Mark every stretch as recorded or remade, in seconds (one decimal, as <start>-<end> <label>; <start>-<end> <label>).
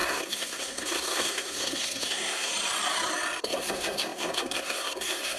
0.0-2.5 remade; 2.5-3.4 recorded; 3.4-5.4 remade